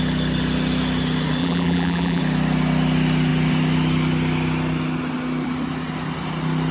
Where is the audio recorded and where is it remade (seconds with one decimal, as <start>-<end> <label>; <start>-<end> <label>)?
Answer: 0.0-1.4 recorded; 1.4-2.2 remade; 2.2-6.7 recorded